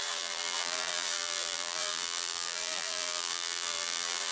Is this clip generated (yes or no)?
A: yes